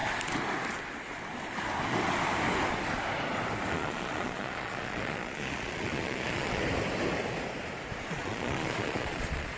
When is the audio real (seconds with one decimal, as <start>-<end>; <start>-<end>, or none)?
0.0-3.7; 6.6-8.1